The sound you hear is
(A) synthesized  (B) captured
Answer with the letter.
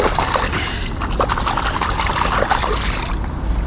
B